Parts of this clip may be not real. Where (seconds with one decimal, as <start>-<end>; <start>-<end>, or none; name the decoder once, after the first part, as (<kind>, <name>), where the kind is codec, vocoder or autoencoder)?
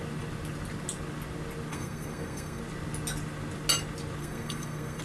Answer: 1.7-2.6 (codec, SNAC); 4.2-5.0